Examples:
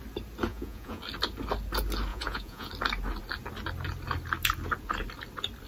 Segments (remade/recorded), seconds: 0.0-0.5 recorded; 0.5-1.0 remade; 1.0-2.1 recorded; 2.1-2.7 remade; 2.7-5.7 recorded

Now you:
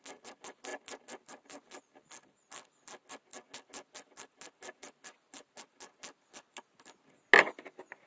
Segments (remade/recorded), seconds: 0.0-8.1 recorded

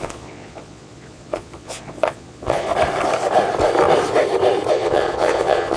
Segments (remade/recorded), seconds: 0.0-2.7 remade; 2.7-4.7 recorded; 4.7-5.8 remade

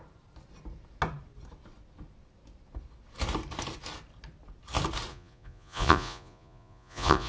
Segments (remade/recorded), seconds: 0.0-5.1 recorded; 5.1-7.3 remade

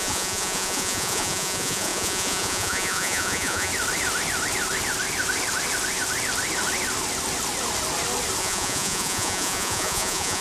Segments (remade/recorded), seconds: 0.0-3.7 remade; 3.7-8.4 recorded; 8.4-10.4 remade

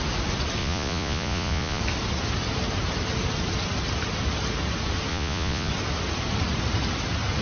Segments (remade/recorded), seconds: 0.0-0.6 recorded; 0.6-1.8 remade; 1.8-5.1 recorded; 5.1-5.7 remade; 5.7-7.4 recorded

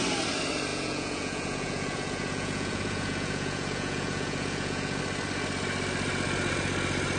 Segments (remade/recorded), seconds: 0.0-0.7 recorded; 0.7-5.0 remade; 5.0-7.2 recorded